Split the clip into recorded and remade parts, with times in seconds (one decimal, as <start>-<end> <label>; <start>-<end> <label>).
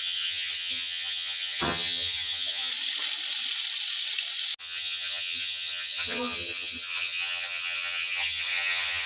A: 0.0-2.7 remade; 2.7-4.6 recorded; 4.6-9.1 remade